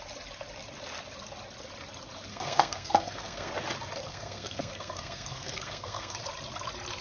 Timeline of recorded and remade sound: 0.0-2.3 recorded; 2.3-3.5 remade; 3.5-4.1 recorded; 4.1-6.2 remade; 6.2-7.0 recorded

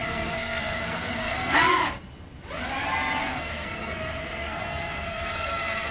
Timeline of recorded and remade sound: 0.0-1.8 remade; 1.8-3.2 recorded; 3.2-5.9 remade

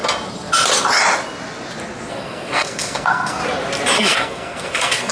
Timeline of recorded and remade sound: 0.0-2.1 recorded; 2.1-3.4 remade; 3.4-4.0 recorded; 4.0-5.1 remade

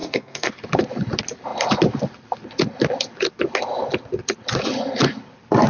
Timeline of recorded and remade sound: 0.0-0.5 remade; 0.5-5.7 recorded

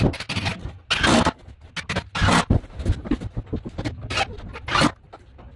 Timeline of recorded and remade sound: 0.0-5.6 recorded

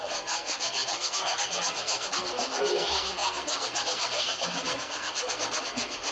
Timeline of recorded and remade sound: 0.0-6.1 remade

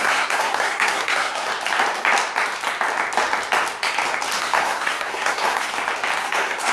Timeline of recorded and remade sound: 0.0-1.5 remade; 1.5-4.4 recorded; 4.4-5.7 remade; 5.7-6.2 recorded; 6.2-6.7 remade

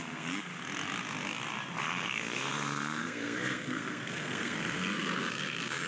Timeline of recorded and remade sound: 0.0-0.5 remade; 0.5-1.8 recorded; 1.8-5.9 remade